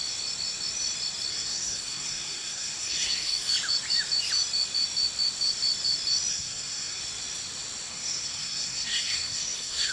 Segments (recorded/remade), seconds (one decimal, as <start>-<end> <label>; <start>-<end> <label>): 0.0-1.3 recorded; 1.3-3.5 remade; 3.5-6.3 recorded; 6.3-7.0 remade; 7.0-7.9 recorded; 7.9-9.9 remade